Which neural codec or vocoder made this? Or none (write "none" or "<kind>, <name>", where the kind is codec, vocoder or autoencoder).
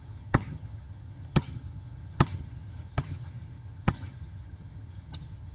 vocoder, HiFi-GAN